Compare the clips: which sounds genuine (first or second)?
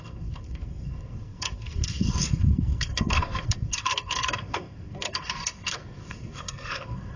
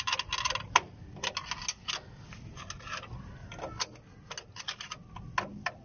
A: second